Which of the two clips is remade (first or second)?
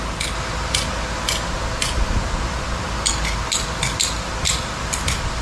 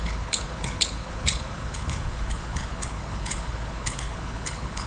second